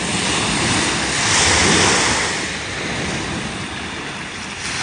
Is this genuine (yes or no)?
yes